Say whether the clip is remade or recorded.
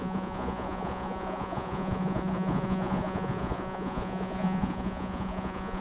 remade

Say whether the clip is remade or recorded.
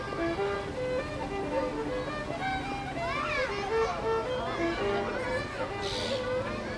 recorded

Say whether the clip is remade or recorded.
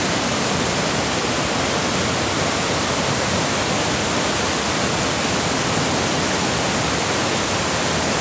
recorded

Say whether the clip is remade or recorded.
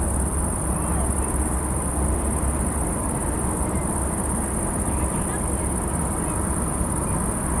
recorded